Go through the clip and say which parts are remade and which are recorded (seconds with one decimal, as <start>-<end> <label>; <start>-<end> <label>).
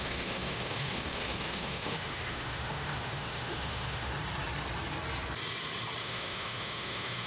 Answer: 0.0-4.1 remade; 4.1-6.0 recorded; 6.0-7.3 remade